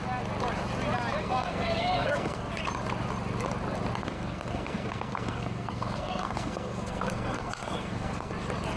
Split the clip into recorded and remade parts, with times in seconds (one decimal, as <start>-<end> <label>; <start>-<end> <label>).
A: 0.0-1.2 recorded; 1.2-2.5 remade; 2.5-4.0 recorded; 4.0-8.3 remade; 8.3-8.8 recorded